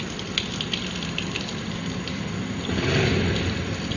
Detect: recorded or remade recorded